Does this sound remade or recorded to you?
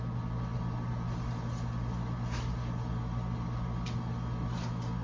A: recorded